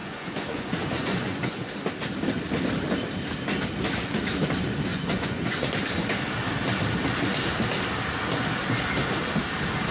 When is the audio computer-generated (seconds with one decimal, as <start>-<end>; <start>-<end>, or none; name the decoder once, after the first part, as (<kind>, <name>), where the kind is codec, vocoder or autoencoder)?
0.0-1.7 (vocoder, Vocos); 4.9-5.7